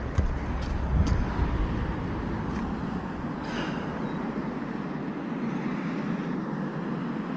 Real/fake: real